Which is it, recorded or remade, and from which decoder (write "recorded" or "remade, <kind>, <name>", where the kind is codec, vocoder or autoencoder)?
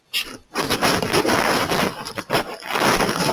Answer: recorded